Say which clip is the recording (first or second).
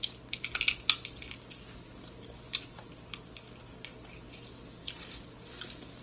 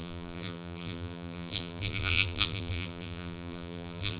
first